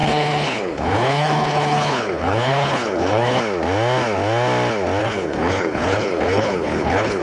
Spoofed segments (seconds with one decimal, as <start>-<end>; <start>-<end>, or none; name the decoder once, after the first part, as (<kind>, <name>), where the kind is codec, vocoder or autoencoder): 0.0-3.4 (codec, HILCodec); 5.0-7.2